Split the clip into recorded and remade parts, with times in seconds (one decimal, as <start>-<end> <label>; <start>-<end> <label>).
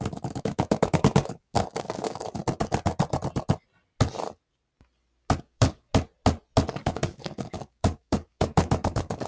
0.0-2.4 remade; 2.4-5.4 recorded; 5.4-5.9 remade; 5.9-6.7 recorded; 6.7-9.3 remade